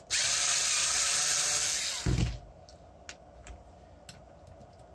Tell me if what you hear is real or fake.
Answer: real